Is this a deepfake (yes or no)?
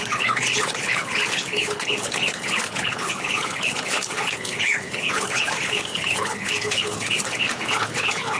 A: yes